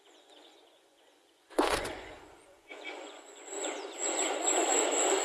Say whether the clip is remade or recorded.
remade